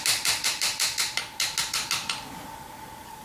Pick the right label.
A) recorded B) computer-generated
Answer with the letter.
A